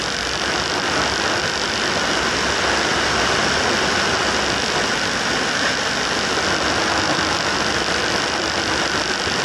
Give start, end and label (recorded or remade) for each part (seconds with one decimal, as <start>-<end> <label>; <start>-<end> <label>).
0.0-9.4 recorded